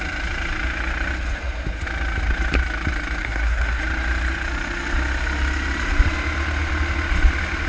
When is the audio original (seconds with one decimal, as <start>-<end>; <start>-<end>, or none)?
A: 0.0-3.2; 3.8-7.7